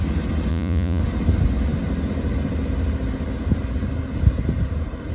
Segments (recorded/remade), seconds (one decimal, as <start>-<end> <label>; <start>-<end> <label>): 0.0-0.5 recorded; 0.5-1.0 remade; 1.0-5.1 recorded